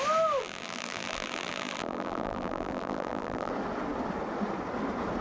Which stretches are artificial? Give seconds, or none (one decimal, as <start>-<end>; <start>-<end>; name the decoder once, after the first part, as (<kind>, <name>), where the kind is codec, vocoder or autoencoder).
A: 0.4-3.5 (vocoder, BigVGAN v2)